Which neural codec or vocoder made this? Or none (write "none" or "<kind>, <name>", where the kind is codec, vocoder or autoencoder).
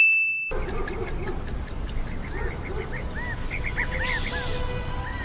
none